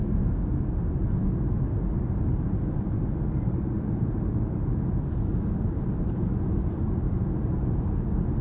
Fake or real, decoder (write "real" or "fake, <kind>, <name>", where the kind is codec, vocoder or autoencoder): real